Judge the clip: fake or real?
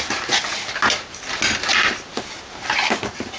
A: real